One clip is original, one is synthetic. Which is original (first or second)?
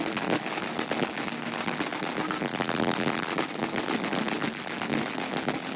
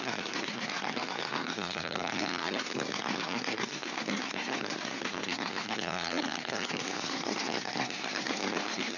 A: first